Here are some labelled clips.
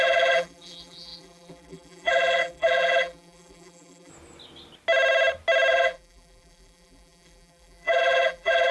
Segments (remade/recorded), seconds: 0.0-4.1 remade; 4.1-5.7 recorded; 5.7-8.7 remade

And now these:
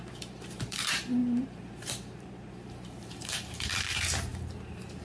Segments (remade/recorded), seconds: 0.0-5.0 remade

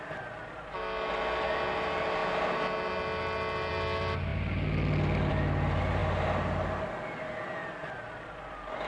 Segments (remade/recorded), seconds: 0.0-8.9 recorded